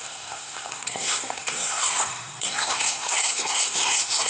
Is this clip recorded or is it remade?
remade